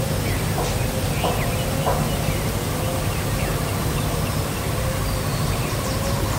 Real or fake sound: real